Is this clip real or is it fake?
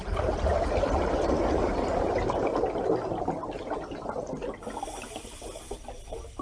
real